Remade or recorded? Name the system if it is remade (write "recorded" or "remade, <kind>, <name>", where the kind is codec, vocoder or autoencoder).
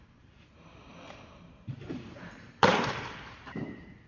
remade, vocoder, BigVGAN v2